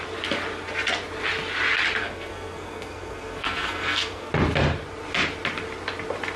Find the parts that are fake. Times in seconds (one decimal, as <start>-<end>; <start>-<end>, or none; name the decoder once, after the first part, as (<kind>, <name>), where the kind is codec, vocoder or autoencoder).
2.0-4.3 (codec, SNAC)

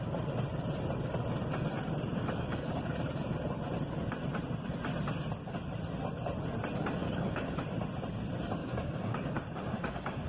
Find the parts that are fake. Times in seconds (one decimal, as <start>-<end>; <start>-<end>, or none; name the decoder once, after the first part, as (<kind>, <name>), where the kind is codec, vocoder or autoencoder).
2.1-2.8 (codec, DAC); 7.0-7.6; 8.6-10.3